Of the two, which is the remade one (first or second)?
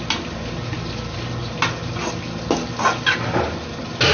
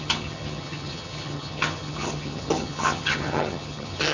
second